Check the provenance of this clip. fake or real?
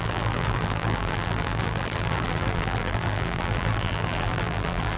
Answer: fake